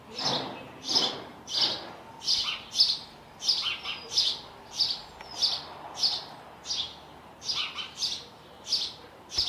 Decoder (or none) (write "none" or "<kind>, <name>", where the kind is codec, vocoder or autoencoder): none